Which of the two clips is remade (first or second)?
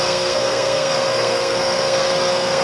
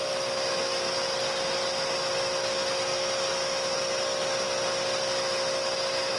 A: first